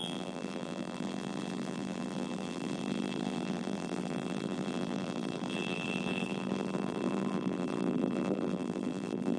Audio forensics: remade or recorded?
remade